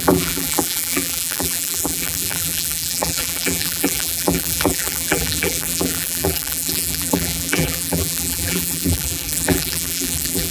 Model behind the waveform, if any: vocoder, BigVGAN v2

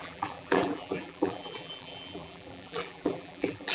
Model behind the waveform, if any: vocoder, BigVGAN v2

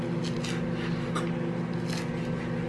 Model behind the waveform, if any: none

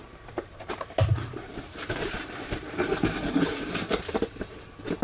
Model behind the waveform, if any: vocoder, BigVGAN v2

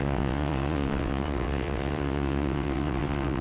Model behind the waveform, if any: vocoder, WaveNeXt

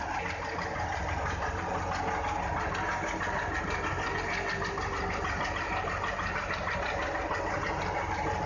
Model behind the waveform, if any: none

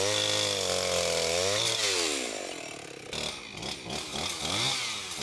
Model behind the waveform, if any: none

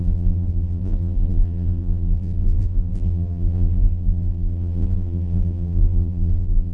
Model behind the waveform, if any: vocoder, BigVGAN v2